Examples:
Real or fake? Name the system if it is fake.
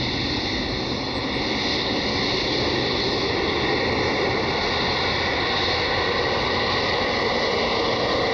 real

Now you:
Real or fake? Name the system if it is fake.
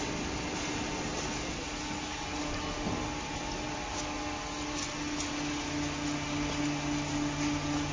real